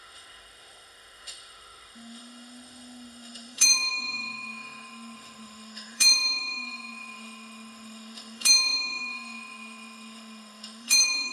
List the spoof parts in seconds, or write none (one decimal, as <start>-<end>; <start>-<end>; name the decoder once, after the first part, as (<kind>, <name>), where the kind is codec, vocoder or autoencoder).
0.0-11.3 (autoencoder, DAC-VAE)